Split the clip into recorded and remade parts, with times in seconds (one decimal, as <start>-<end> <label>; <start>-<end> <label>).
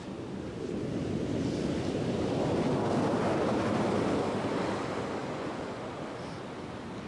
0.0-5.2 recorded; 5.2-5.8 remade; 5.8-7.1 recorded